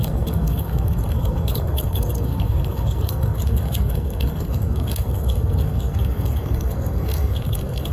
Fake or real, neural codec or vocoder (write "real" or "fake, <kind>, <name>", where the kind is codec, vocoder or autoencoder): fake, codec, SNAC